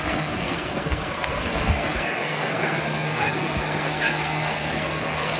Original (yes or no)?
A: no